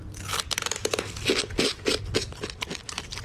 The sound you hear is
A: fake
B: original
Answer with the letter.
B